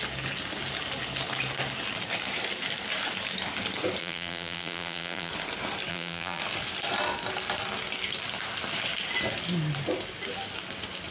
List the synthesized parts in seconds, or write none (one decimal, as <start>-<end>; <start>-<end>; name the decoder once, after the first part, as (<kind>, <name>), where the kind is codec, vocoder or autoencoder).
4.0-5.3 (vocoder, BigVGAN v2); 5.9-6.4